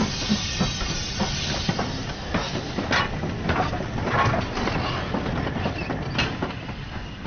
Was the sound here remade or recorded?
recorded